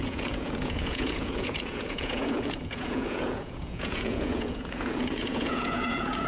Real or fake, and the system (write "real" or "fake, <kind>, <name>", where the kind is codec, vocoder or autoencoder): fake, vocoder, Vocos